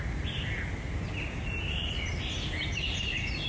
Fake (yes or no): no